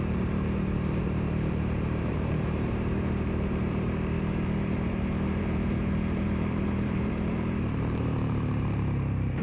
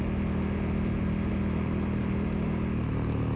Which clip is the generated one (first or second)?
first